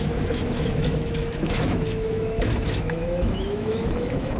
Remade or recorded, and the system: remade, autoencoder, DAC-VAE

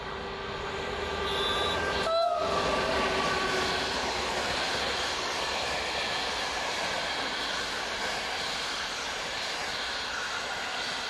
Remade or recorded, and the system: recorded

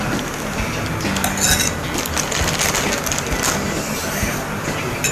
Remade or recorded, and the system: recorded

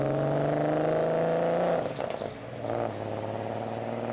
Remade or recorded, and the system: recorded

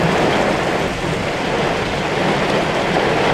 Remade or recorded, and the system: recorded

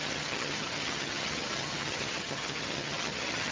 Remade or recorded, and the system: remade, vocoder, HiFi-GAN